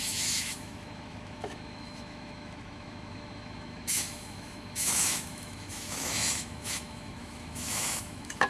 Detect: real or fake fake